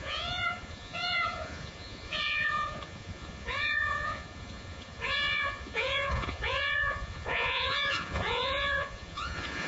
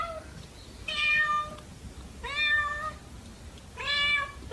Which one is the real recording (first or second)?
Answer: second